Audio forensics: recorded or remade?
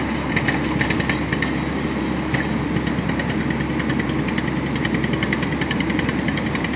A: recorded